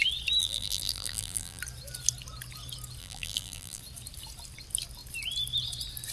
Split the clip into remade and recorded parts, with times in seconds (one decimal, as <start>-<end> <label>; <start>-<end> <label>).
0.0-0.4 recorded; 0.4-1.6 remade; 1.6-3.0 recorded; 3.0-3.8 remade; 3.8-6.1 recorded